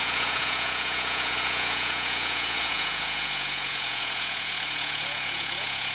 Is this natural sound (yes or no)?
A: no